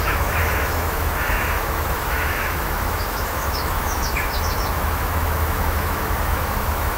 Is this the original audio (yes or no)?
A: no